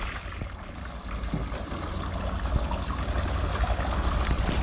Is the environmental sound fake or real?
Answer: real